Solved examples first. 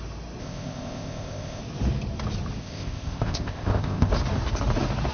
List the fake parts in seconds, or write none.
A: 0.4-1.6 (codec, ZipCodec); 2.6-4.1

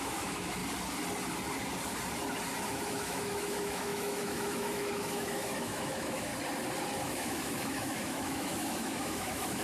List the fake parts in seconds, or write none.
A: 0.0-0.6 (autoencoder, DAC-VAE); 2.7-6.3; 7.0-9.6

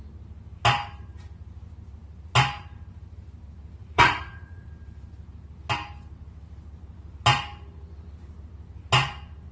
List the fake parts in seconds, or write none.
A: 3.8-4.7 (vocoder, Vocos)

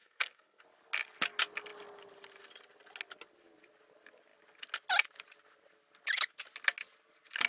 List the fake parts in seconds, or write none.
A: 0.0-0.6 (codec, SNAC)

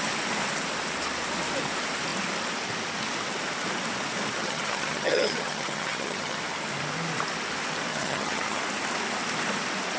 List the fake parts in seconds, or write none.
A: 4.4-6.4 (vocoder, HiFi-GAN); 7.9-8.6

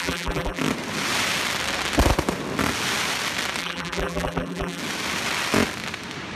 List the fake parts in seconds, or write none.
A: 0.0-0.6 (vocoder, BigVGAN v2); 3.6-4.8

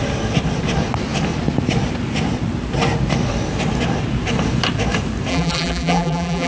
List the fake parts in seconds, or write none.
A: 5.3-6.5 (vocoder, BigVGAN v2)